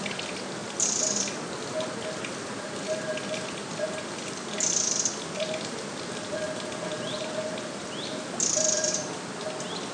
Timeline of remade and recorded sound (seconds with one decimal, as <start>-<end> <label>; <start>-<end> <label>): 0.0-9.9 recorded